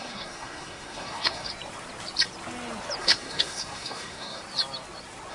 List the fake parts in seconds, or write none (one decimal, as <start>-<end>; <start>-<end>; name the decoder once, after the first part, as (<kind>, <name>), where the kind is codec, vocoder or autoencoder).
0.0-1.5 (codec, SNAC); 3.0-4.4